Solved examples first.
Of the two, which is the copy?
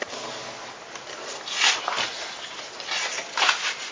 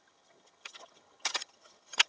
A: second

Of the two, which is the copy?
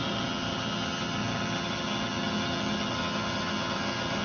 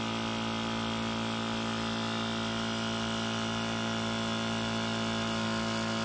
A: first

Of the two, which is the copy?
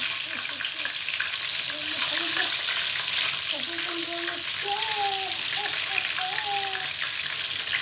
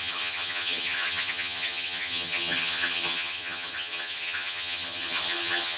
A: second